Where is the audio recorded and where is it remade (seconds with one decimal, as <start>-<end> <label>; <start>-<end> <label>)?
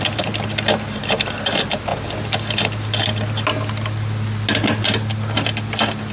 0.0-6.1 recorded